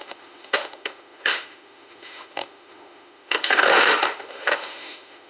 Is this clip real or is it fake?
fake